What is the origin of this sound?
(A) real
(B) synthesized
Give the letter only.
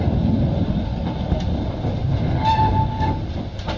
A